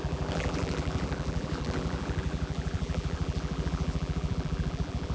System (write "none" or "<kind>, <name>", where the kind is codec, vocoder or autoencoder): vocoder, BigVGAN v2